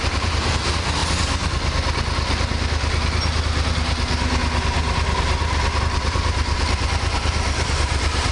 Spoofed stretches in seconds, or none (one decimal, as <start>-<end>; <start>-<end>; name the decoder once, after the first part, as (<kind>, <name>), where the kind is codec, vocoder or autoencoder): 0.0-1.0 (vocoder, BigVGAN v2); 5.8-8.3